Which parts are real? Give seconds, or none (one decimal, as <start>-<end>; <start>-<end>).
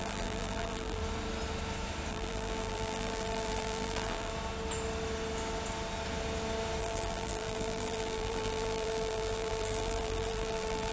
1.0-2.1; 4.3-6.8